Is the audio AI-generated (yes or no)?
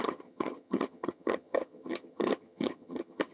yes